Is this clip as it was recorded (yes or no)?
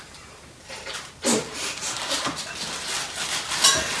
yes